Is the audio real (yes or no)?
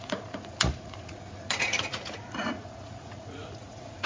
no